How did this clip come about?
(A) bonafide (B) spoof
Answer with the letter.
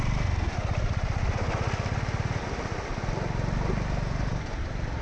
A